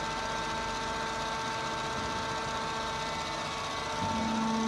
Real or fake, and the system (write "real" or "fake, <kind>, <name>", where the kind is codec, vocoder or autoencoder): real